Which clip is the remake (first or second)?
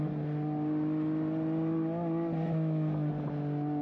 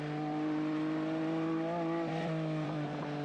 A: second